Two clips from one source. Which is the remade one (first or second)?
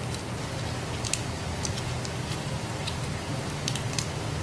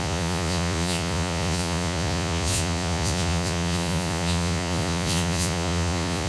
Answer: second